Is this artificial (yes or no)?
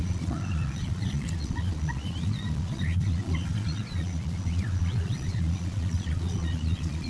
yes